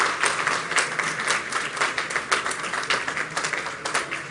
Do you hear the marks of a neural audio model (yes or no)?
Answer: no